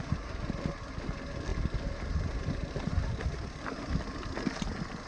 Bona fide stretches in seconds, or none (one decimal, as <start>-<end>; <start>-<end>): 0.0-5.1